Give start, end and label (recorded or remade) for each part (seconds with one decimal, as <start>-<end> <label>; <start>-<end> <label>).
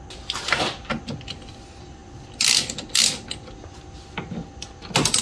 0.0-5.2 recorded